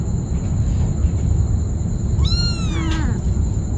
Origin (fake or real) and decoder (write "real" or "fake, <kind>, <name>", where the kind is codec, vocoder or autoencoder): real